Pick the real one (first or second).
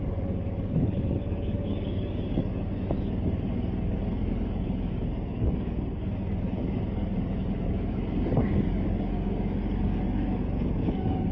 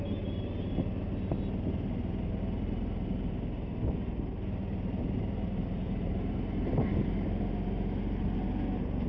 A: second